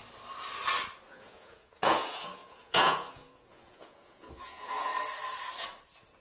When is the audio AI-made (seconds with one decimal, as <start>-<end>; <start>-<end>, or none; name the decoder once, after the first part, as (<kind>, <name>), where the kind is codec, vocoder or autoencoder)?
1.1-4.9 (vocoder, Vocos)